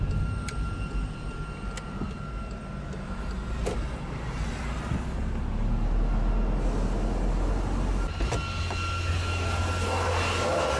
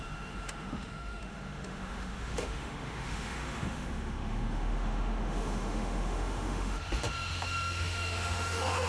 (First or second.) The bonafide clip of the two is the first